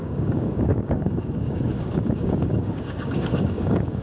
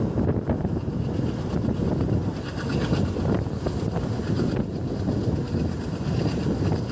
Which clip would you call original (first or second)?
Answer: second